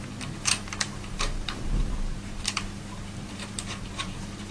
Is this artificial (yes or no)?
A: yes